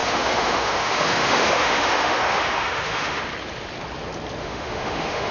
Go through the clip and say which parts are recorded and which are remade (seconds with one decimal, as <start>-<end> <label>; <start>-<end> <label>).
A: 0.0-3.2 remade; 3.2-4.4 recorded; 4.4-5.3 remade